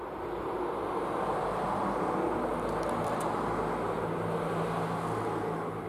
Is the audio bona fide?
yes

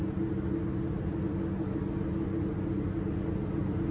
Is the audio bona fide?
yes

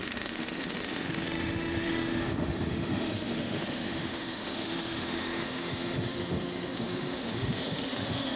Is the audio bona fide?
no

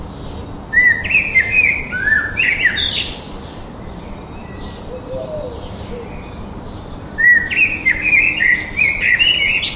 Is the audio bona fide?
yes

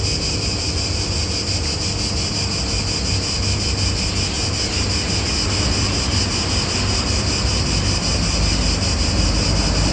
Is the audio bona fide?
yes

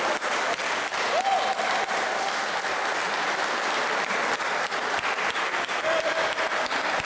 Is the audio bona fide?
yes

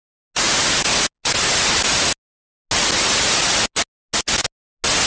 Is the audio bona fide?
yes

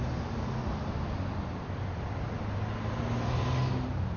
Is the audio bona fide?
yes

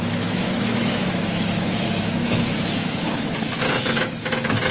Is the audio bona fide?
no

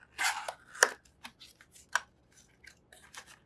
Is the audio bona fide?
yes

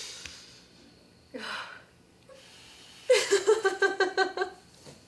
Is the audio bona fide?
yes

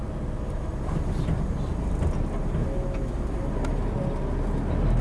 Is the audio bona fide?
yes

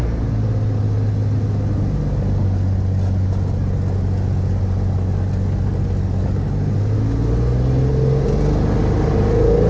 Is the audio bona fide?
yes